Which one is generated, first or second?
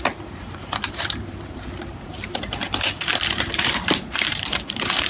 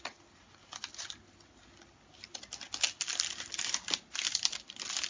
first